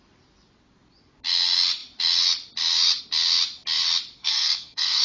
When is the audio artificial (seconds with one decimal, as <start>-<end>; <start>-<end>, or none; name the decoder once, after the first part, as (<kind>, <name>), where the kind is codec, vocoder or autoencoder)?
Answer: 4.2-5.0 (codec, SNAC)